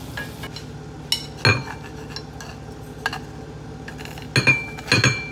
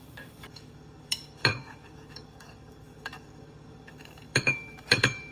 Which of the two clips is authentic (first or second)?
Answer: first